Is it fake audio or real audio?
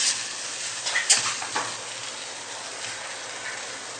real